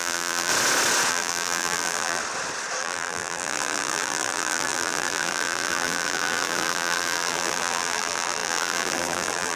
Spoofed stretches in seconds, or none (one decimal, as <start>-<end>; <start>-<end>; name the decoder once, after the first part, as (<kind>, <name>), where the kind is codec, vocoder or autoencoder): 0.0-0.5 (vocoder, BigVGAN v2); 1.1-2.2; 2.8-9.6